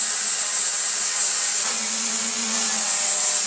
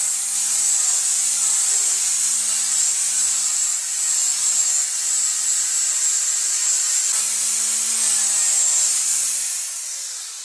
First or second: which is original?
second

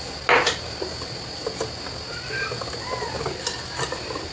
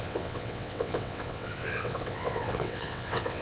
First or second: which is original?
first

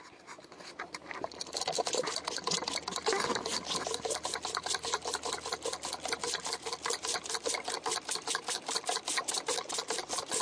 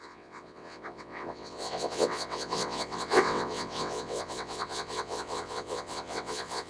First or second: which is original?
first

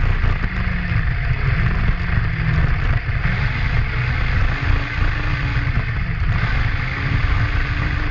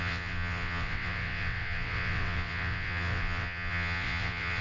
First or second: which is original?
first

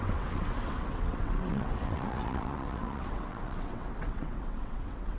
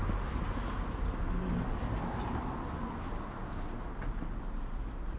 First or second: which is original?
second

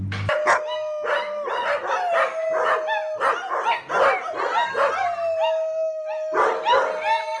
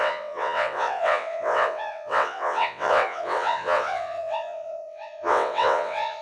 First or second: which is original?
first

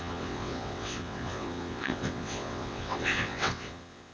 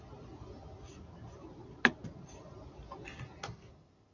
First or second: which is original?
second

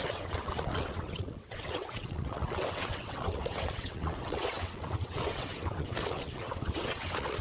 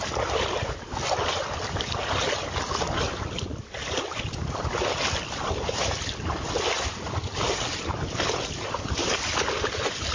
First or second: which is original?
second